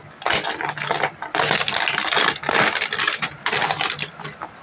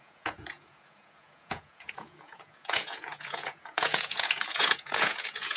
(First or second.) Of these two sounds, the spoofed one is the second